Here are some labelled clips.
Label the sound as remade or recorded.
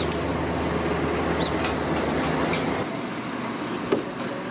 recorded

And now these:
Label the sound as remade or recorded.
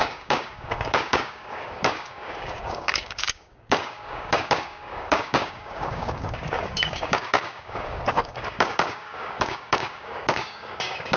remade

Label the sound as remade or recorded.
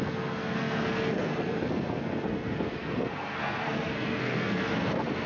remade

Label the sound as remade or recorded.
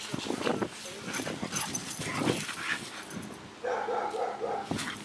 recorded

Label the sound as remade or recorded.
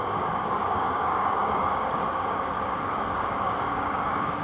remade